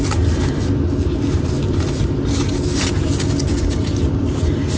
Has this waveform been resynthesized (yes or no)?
no